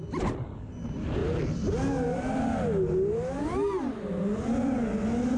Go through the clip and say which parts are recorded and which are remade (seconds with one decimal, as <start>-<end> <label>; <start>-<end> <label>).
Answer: 0.0-5.4 recorded